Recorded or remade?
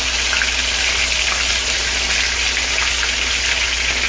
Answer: recorded